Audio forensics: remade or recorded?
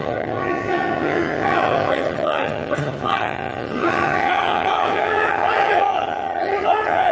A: remade